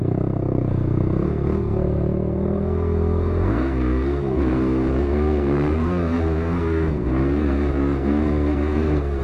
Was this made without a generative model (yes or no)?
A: no